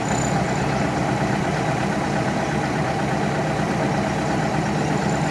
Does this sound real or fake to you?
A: real